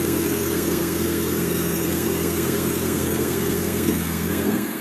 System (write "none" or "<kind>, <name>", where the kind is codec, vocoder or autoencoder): codec, SNAC